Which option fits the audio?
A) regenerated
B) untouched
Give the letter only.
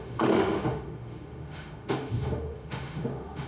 A